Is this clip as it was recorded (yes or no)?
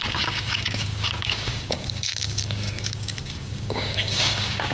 no